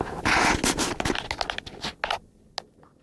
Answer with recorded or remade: recorded